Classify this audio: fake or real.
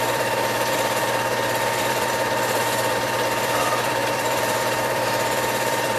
fake